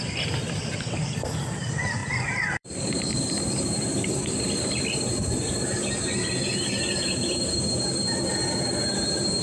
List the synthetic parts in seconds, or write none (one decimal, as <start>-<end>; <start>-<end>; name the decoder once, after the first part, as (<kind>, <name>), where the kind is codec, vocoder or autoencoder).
2.0-2.7 (vocoder, BigVGAN v2); 3.1-5.6